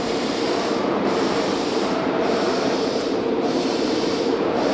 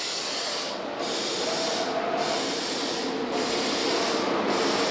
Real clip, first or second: second